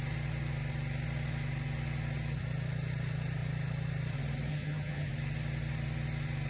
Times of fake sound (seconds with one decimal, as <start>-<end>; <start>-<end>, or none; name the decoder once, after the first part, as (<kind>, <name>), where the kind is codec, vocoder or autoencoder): 4.5-5.1 (vocoder, HiFi-GAN)